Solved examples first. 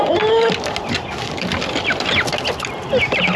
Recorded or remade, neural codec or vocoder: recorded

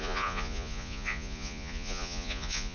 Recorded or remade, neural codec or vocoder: remade, vocoder, Vocos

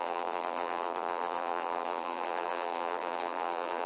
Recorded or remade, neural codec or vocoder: remade, vocoder, BigVGAN v2